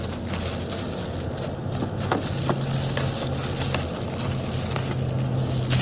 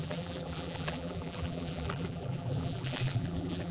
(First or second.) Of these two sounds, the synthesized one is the second